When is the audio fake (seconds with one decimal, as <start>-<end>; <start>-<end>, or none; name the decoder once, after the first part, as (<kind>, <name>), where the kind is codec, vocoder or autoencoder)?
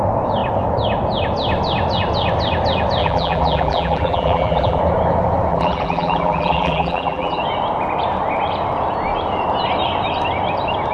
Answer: 3.0-4.8 (vocoder, BigVGAN v2); 5.5-7.4